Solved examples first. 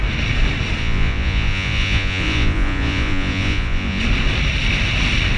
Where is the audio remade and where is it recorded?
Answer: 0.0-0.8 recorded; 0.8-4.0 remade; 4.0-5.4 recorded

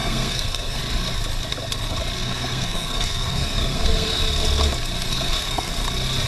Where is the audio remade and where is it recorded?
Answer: 0.0-0.8 remade; 0.8-2.2 recorded; 2.2-4.2 remade; 4.2-5.1 recorded; 5.1-5.7 remade; 5.7-6.3 recorded

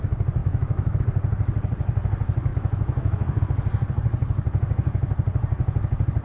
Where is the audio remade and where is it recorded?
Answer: 0.0-0.4 recorded; 0.4-1.0 remade; 1.0-2.5 recorded; 2.5-3.4 remade; 3.4-6.2 recorded

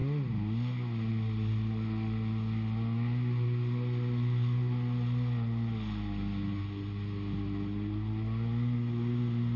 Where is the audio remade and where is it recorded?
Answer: 0.0-9.6 recorded

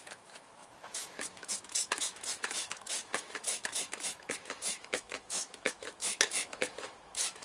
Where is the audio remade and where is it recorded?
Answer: 0.0-7.4 remade

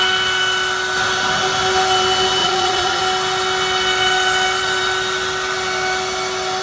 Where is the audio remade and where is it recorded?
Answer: 0.0-2.4 recorded; 2.4-3.0 remade; 3.0-6.6 recorded

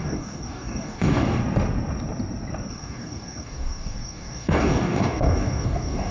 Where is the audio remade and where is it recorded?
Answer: 0.0-1.4 remade; 1.4-2.7 recorded; 2.7-6.1 remade

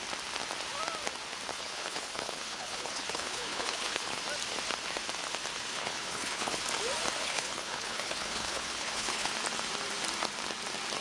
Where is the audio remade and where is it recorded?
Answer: 0.0-1.5 recorded; 1.5-4.2 remade; 4.2-5.7 recorded; 5.7-6.6 remade; 6.6-7.2 recorded; 7.2-9.3 remade; 9.3-11.0 recorded